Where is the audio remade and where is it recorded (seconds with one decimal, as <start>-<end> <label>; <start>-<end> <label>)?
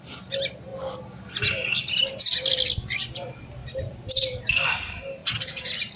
0.0-3.6 recorded; 3.6-4.8 remade; 4.8-5.2 recorded; 5.2-6.0 remade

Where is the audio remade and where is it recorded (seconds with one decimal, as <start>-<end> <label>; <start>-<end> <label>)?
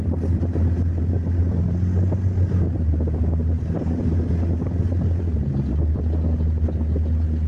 0.0-7.5 recorded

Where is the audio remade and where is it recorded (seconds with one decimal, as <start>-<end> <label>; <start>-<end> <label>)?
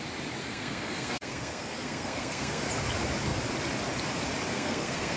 0.0-0.4 recorded; 0.4-2.6 remade; 2.6-4.5 recorded; 4.5-5.2 remade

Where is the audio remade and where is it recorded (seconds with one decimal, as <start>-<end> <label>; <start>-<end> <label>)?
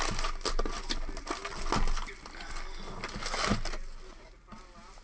0.0-5.0 recorded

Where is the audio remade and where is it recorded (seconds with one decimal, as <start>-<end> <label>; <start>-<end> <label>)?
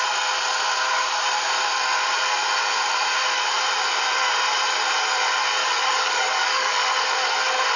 0.0-5.6 recorded; 5.6-6.9 remade; 6.9-7.8 recorded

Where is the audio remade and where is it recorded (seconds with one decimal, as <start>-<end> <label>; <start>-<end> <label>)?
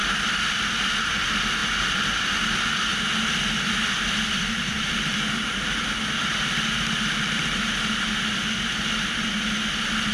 0.0-10.1 recorded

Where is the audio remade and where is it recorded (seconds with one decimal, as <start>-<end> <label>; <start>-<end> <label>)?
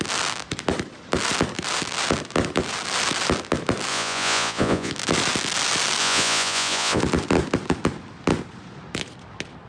0.0-3.9 recorded; 3.9-4.9 remade; 4.9-6.0 recorded; 6.0-7.0 remade; 7.0-9.7 recorded